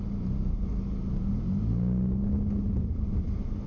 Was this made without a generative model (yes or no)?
yes